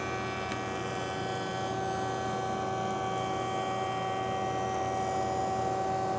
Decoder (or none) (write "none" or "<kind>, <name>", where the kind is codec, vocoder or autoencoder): none